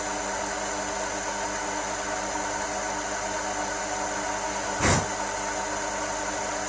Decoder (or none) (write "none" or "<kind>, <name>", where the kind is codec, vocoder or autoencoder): none